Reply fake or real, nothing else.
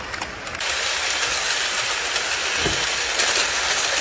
real